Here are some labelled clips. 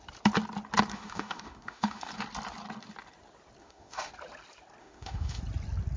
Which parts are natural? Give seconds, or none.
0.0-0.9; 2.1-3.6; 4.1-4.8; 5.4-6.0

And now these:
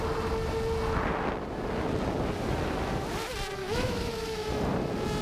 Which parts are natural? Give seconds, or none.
0.0-3.6; 4.5-5.2

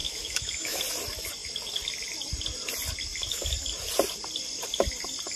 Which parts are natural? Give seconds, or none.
0.8-5.4

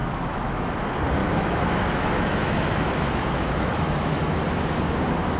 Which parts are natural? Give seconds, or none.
0.7-1.2; 4.4-5.4

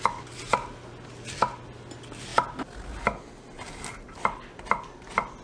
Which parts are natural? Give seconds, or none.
0.0-5.4

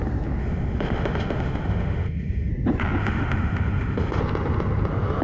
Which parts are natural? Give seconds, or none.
0.0-0.4; 2.5-3.0; 4.2-5.2

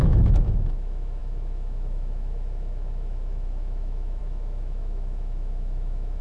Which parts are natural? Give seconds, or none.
none

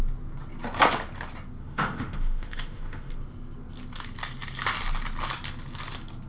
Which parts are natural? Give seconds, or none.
0.0-1.6; 3.1-6.3